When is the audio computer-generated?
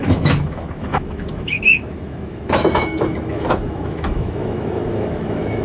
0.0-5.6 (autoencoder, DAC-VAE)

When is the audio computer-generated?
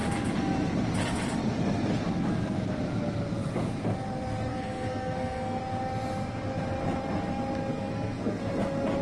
4.5-5.6 (codec, SNAC); 7.7-8.4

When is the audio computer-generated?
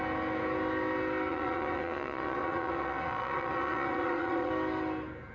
1.3-4.5 (vocoder, Vocos)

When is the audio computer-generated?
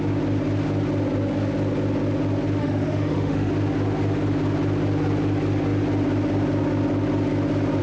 2.6-3.5 (autoencoder, DAC-VAE)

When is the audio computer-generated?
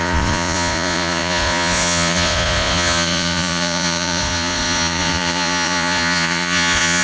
0.0-7.0 (vocoder, Vocos)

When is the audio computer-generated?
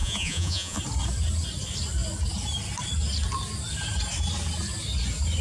0.0-0.8 (vocoder, Vocos)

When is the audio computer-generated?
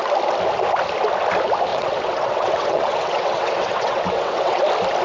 1.7-4.6 (vocoder, WaveNeXt)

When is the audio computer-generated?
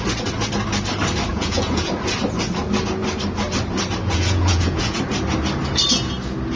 1.3-1.9 (vocoder, Vocos); 4.1-5.0